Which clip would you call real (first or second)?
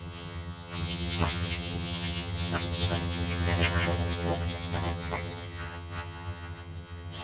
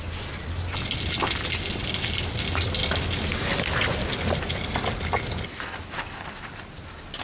second